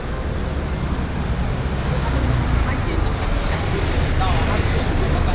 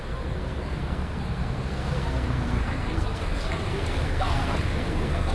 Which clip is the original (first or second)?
first